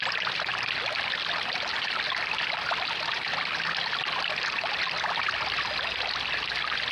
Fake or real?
real